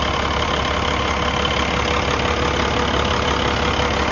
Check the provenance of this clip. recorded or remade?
recorded